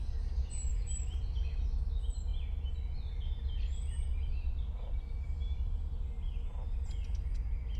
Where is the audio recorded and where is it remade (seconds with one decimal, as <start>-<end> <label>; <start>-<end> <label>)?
0.0-0.7 recorded; 0.7-1.4 remade; 1.4-7.8 recorded